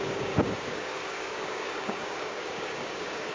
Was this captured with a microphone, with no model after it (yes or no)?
no